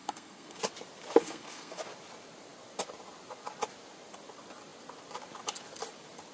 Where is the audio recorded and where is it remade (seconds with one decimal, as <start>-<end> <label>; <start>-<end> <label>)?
0.0-0.6 remade; 0.6-1.2 recorded; 1.2-1.8 remade; 1.8-6.3 recorded